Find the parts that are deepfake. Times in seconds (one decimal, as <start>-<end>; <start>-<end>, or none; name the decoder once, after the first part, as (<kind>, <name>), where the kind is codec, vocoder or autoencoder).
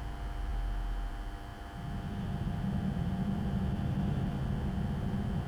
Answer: none